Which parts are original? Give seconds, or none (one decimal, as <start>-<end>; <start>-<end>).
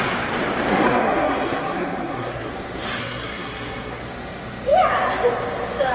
0.0-0.7; 2.5-3.0; 4.0-5.9